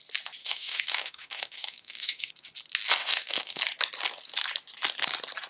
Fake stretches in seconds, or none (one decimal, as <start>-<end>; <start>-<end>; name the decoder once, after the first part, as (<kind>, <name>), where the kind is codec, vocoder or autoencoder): 0.4-2.3 (autoencoder, DAC-VAE); 3.0-3.6